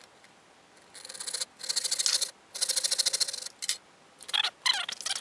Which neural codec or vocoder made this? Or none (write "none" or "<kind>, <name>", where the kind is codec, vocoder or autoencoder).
none